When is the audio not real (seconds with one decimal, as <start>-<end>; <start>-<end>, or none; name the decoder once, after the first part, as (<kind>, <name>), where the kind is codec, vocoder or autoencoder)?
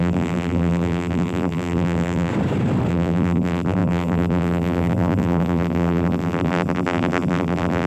0.0-2.3 (vocoder, BigVGAN v2); 2.9-7.9